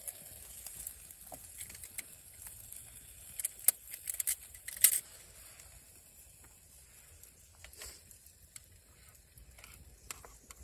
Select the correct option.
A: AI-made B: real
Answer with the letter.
B